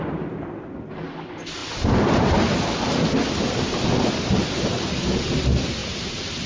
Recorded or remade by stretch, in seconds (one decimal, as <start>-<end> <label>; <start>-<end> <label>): 0.0-5.8 recorded; 5.8-6.5 remade